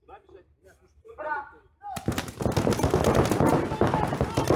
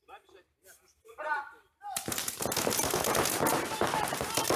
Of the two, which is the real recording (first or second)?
first